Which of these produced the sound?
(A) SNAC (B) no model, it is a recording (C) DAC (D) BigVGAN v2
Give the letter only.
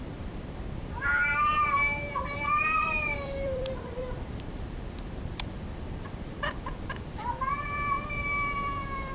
D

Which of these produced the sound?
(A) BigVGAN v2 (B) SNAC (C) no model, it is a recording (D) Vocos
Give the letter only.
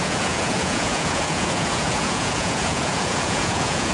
D